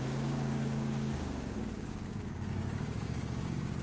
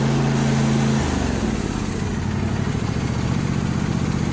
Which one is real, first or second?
second